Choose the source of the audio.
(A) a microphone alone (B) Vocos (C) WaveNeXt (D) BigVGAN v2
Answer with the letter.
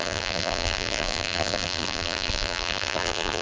D